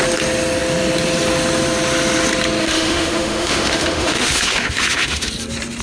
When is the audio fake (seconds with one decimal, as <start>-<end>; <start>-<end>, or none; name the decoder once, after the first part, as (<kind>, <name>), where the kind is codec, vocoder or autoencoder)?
2.6-5.3 (autoencoder, DAC-VAE)